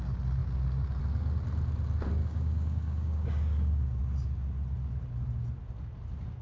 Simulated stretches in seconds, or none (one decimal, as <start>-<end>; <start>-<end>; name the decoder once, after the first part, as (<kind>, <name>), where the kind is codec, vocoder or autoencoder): 2.2-4.0 (codec, DAC)